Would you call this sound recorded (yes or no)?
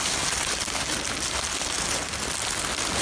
yes